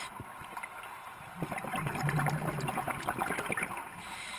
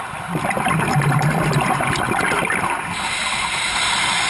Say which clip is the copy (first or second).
second